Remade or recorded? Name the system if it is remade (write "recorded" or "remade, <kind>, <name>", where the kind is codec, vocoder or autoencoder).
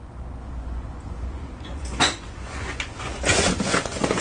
remade, vocoder, Vocos